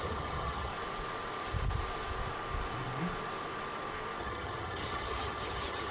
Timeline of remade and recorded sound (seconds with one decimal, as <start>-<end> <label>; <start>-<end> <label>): 0.0-0.7 remade; 0.7-4.2 recorded; 4.2-5.9 remade